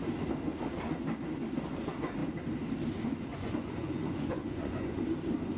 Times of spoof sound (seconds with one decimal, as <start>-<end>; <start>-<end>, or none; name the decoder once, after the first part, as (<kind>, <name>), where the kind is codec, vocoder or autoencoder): 3.3-5.0 (vocoder, Vocos)